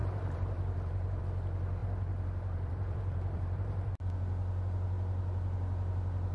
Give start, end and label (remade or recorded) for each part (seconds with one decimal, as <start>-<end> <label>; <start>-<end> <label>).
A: 0.0-1.2 remade; 1.2-1.8 recorded; 1.8-3.9 remade; 3.9-6.3 recorded